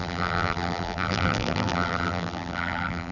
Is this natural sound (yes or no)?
no